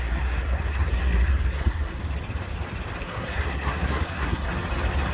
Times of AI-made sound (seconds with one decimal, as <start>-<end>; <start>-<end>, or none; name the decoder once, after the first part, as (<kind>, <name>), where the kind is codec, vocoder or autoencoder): 0.0-2.0 (codec, SNAC); 3.0-4.5